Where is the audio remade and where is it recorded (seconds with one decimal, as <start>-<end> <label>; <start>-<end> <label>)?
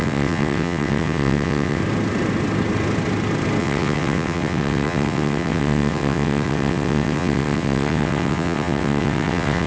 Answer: 0.0-1.8 remade; 1.8-3.6 recorded; 3.6-9.7 remade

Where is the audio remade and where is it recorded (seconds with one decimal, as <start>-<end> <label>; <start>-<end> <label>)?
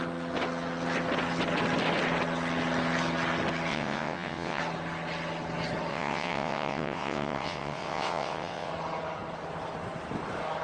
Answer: 0.0-3.7 recorded; 3.7-4.6 remade; 4.6-5.9 recorded; 5.9-8.7 remade; 8.7-10.6 recorded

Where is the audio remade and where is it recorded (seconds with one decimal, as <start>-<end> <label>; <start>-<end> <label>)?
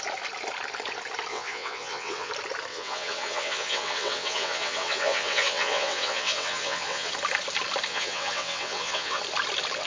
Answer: 0.0-1.3 recorded; 1.3-2.3 remade; 2.3-2.7 recorded; 2.7-7.1 remade; 7.1-7.9 recorded; 7.9-9.2 remade; 9.2-9.9 recorded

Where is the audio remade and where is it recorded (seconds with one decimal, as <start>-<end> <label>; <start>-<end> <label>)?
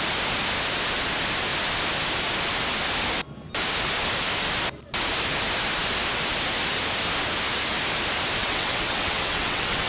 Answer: 0.0-8.4 recorded; 8.4-9.9 remade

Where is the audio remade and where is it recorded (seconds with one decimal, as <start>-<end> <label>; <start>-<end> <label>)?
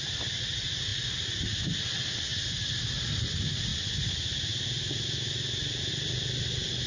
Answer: 0.0-6.9 recorded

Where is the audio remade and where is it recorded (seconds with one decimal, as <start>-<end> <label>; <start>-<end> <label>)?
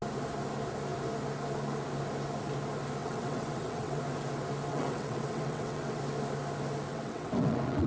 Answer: 0.0-3.0 recorded; 3.0-4.0 remade; 4.0-4.7 recorded; 4.7-6.0 remade; 6.0-6.9 recorded; 6.9-7.9 remade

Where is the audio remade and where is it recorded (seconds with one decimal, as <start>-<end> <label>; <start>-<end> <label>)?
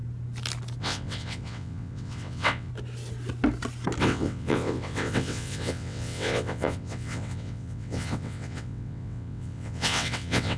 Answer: 0.0-0.8 recorded; 0.8-2.7 remade; 2.7-4.0 recorded; 4.0-10.6 remade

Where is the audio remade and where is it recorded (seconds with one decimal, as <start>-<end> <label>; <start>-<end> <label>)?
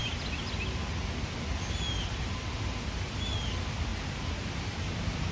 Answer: 0.0-5.3 recorded